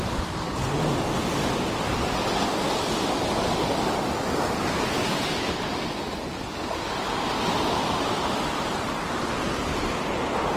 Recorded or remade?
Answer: recorded